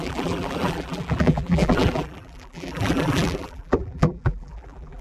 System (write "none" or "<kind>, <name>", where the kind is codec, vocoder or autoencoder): vocoder, BigVGAN v2